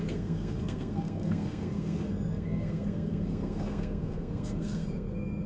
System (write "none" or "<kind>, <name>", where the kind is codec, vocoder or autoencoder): codec, SNAC